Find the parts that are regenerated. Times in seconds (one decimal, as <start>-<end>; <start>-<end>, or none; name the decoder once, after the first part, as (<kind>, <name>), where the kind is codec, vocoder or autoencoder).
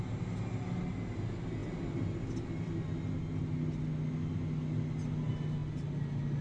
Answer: none